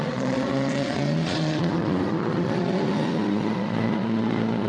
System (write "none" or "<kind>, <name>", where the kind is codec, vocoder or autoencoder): vocoder, Vocos